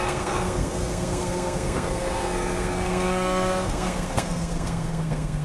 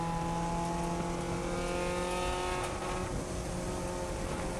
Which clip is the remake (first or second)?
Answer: first